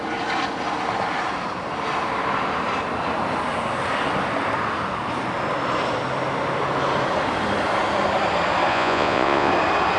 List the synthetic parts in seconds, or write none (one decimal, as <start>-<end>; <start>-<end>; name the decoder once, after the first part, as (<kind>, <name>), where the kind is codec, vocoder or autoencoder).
8.7-9.5 (vocoder, Vocos)